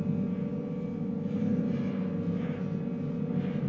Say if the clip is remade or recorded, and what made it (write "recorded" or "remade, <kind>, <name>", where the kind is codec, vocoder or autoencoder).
recorded